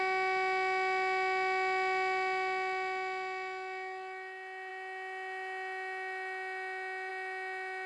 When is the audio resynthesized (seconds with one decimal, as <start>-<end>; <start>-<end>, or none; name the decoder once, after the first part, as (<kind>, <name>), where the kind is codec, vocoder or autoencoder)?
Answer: none